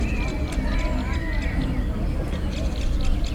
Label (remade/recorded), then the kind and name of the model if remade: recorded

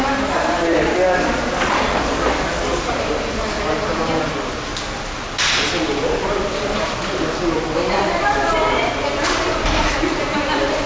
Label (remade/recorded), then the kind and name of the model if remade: remade, vocoder, BigVGAN v2